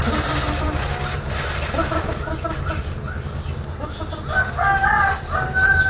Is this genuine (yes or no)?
yes